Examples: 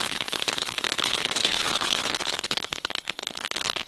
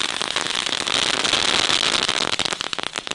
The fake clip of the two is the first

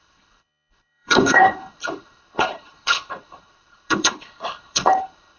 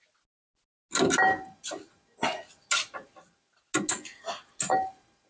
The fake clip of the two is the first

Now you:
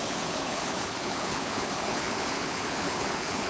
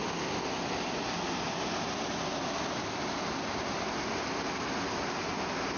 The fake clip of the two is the first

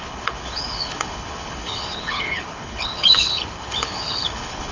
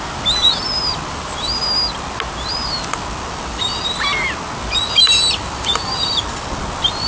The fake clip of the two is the first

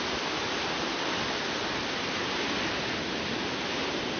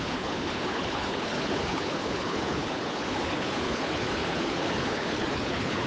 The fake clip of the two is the second